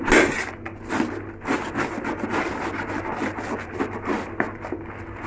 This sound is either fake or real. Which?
real